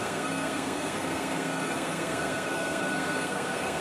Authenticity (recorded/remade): remade